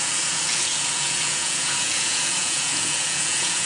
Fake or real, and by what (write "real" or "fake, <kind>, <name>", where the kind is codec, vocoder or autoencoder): fake, vocoder, Vocos